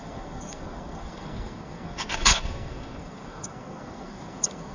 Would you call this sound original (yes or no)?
no